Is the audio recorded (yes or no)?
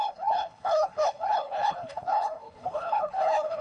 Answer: no